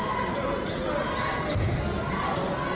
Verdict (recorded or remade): recorded